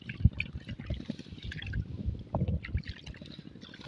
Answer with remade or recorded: recorded